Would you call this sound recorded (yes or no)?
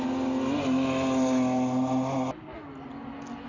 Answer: yes